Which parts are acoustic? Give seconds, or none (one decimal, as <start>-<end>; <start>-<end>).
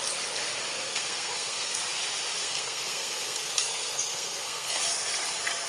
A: 0.0-0.7; 1.8-2.4; 4.8-5.7